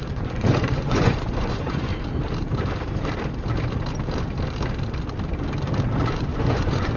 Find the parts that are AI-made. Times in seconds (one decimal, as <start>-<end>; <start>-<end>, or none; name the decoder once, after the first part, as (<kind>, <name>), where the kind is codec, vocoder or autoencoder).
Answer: 0.0-1.9 (vocoder, Vocos); 6.1-7.0